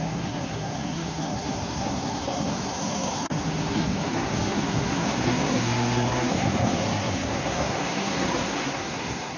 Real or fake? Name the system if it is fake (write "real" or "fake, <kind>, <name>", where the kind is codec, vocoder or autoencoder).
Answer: fake, codec, SNAC